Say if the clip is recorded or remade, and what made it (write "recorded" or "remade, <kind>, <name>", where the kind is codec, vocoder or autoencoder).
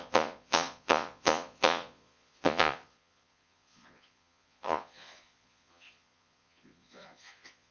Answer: remade, vocoder, Vocos